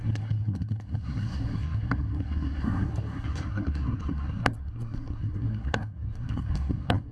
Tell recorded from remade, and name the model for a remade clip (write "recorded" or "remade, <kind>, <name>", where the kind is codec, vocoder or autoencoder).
remade, codec, SNAC